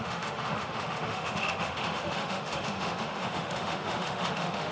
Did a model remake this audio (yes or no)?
yes